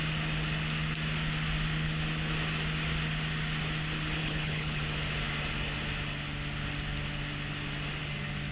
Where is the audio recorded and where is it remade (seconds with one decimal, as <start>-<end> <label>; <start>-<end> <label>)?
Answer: 0.0-4.2 recorded; 4.2-4.8 remade; 4.8-8.5 recorded

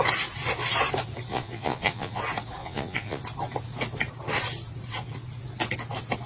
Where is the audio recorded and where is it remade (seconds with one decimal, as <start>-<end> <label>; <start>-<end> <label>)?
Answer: 0.0-1.3 recorded; 1.3-2.2 remade; 2.2-2.6 recorded; 2.6-3.2 remade; 3.2-6.3 recorded

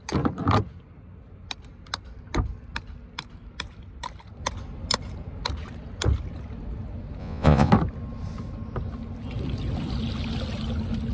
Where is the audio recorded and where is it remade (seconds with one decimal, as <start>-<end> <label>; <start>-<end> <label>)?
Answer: 0.0-7.2 recorded; 7.2-7.7 remade; 7.7-11.1 recorded

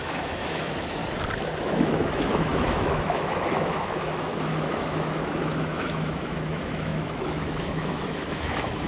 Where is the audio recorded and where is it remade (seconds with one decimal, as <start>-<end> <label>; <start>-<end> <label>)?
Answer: 0.0-1.0 remade; 1.0-1.6 recorded; 1.6-8.9 remade

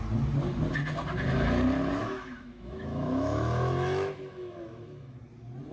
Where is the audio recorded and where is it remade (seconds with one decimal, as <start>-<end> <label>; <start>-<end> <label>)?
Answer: 0.0-2.0 recorded; 2.0-5.2 remade; 5.2-5.7 recorded

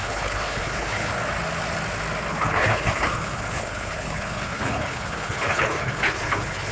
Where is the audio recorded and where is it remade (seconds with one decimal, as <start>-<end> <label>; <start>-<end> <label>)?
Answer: 0.0-1.1 remade; 1.1-2.3 recorded; 2.3-6.7 remade

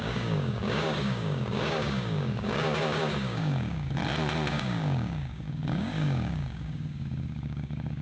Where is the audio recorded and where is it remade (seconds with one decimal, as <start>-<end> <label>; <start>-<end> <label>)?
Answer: 0.0-4.0 remade; 4.0-4.5 recorded; 4.5-8.0 remade

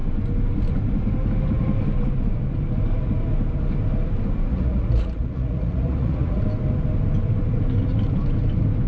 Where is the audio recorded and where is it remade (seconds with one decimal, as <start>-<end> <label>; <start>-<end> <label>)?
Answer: 0.0-4.5 recorded; 4.5-6.4 remade; 6.4-8.9 recorded